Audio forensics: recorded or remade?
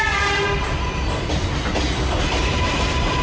recorded